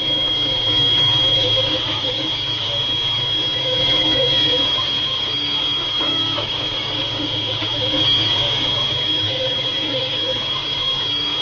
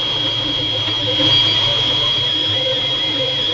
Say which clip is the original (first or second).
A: second